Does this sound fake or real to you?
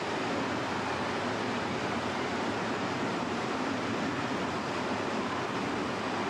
real